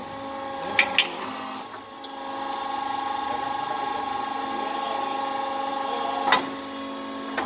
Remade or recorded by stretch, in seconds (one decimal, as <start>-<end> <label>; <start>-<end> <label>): 0.0-7.5 recorded

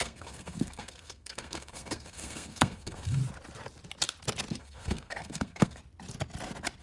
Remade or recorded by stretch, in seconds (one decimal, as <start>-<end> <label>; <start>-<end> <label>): 0.0-3.2 remade; 3.2-4.6 recorded; 4.6-5.8 remade; 5.8-6.8 recorded